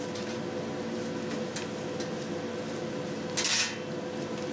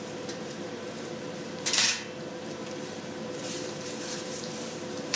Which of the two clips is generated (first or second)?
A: second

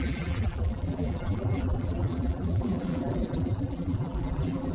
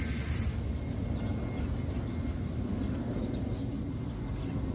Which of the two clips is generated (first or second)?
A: first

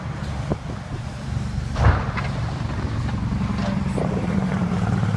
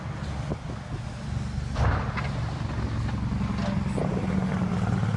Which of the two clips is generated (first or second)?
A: first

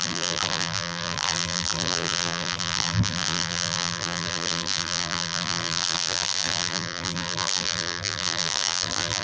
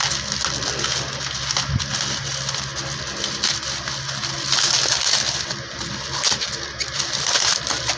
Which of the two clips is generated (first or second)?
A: first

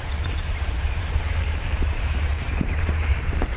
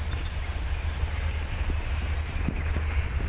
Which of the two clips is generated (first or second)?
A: first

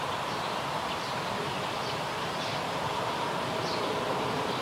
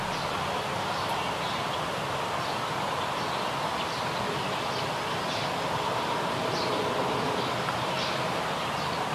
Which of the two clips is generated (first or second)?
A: first